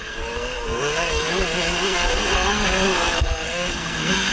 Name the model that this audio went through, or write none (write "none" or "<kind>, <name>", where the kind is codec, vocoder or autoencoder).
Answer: codec, SNAC